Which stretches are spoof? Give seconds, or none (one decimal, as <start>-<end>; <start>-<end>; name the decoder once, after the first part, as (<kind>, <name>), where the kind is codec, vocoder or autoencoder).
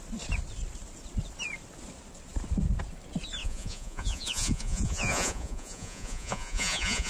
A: 3.4-7.1 (vocoder, Vocos)